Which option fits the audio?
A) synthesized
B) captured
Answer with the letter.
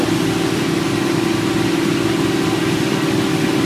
B